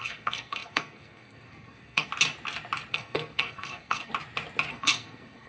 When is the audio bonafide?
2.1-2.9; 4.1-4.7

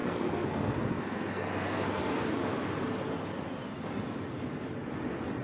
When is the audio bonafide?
2.1-5.4

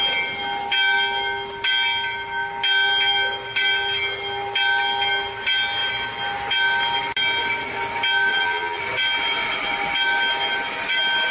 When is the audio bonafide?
0.0-8.3; 8.8-11.3

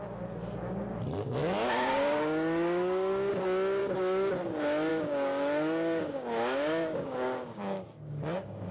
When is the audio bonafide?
0.0-1.4; 3.3-3.8; 4.3-4.9; 8.1-8.7

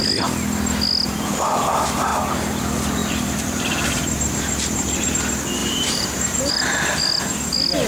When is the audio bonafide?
0.0-3.0; 5.1-5.6; 6.5-7.9

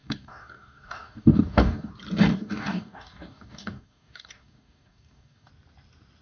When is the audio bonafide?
1.9-2.3; 5.5-6.2

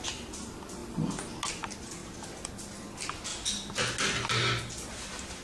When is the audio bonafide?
0.0-5.4